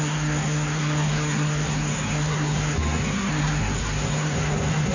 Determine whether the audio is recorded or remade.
remade